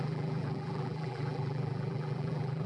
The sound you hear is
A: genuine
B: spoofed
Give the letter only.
B